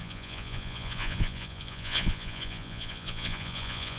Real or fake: fake